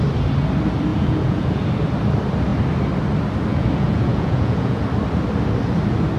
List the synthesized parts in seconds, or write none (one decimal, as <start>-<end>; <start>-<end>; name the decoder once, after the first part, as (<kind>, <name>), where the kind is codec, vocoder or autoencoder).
0.9-1.6 (vocoder, Vocos); 3.5-4.8